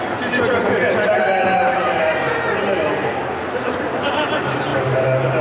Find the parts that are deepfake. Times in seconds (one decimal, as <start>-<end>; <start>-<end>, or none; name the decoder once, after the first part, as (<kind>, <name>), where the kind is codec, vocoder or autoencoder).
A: none